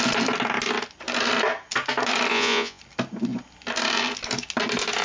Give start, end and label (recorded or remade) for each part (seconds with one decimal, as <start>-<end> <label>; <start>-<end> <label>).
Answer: 0.0-2.3 recorded; 2.3-2.8 remade; 2.8-5.0 recorded

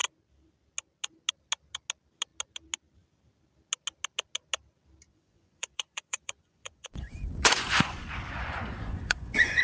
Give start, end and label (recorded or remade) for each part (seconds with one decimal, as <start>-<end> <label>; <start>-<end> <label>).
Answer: 0.0-5.1 recorded; 5.1-9.6 remade

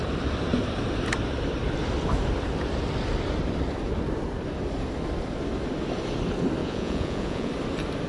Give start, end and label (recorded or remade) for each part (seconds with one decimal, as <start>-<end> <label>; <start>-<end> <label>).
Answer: 0.0-6.6 recorded; 6.6-7.5 remade; 7.5-8.1 recorded

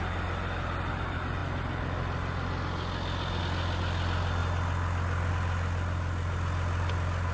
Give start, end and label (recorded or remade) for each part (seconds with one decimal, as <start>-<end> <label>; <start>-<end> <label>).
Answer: 0.0-7.3 recorded

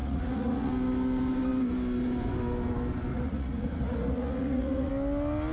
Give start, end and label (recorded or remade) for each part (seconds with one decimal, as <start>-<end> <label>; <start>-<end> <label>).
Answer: 0.0-0.7 remade; 0.7-3.1 recorded; 3.1-4.9 remade; 4.9-5.5 recorded